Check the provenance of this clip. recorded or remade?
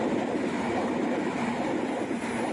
recorded